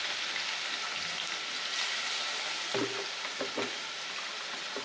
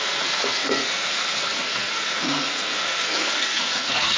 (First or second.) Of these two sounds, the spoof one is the second